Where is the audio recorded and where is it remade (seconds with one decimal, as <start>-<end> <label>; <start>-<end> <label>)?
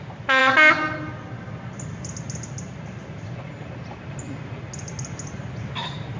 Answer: 0.0-6.2 recorded